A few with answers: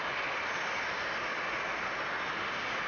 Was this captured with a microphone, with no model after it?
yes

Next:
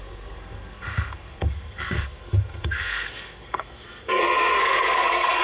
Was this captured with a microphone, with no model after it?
no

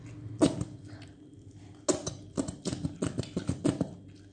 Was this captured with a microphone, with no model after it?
yes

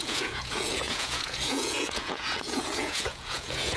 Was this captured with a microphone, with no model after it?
no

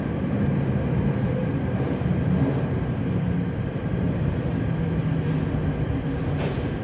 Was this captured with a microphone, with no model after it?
yes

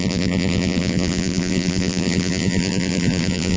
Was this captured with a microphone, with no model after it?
no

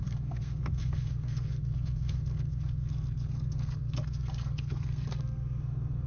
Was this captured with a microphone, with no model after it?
no